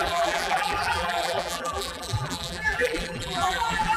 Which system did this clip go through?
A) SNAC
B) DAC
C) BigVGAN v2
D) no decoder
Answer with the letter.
C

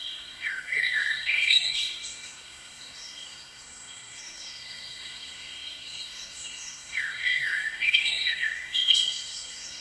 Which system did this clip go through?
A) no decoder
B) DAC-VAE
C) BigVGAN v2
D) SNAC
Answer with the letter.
D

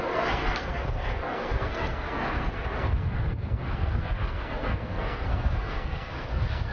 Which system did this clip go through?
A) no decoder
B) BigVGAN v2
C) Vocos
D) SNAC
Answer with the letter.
D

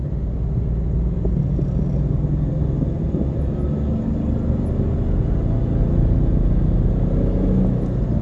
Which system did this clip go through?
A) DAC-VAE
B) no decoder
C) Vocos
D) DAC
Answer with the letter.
B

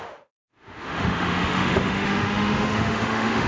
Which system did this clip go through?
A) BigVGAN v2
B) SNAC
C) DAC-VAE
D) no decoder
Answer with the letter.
C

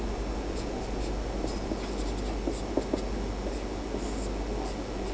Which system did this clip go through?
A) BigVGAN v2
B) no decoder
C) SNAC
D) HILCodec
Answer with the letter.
B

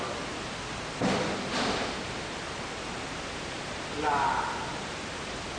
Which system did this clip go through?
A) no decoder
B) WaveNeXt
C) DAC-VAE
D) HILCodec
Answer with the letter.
A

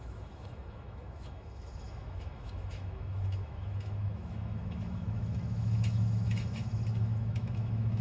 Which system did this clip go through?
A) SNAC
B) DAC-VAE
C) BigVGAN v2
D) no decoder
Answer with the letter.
B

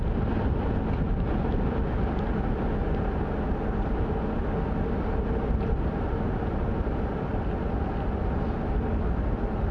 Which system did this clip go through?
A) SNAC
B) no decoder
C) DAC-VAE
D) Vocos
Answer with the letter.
B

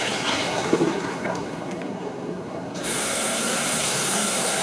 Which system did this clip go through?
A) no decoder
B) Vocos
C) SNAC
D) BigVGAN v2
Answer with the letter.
C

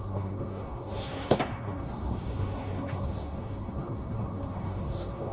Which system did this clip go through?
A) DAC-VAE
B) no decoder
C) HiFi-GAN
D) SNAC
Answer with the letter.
D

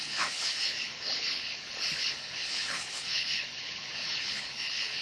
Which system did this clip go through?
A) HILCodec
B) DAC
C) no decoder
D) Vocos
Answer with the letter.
A